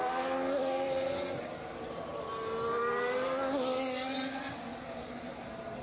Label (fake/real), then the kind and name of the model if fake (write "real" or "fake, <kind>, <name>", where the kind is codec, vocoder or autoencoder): real